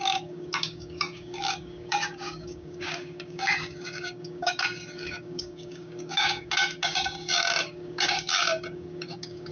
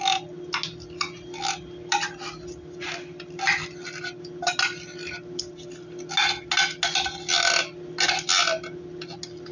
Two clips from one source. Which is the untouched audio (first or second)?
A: second